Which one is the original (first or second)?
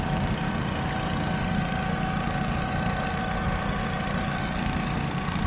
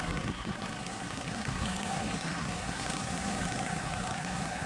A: first